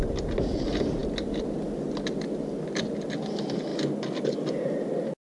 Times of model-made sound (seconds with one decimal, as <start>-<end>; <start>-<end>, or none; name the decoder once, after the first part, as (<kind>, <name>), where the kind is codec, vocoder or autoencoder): none